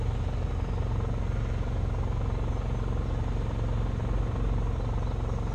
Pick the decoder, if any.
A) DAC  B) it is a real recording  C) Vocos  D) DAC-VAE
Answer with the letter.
B